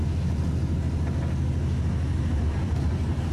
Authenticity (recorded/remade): recorded